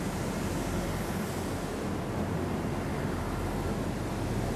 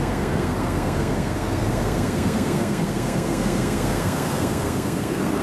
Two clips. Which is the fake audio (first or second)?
second